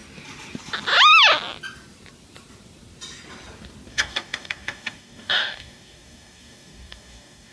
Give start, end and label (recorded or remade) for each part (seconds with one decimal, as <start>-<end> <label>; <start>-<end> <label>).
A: 0.0-3.9 recorded; 3.9-7.5 remade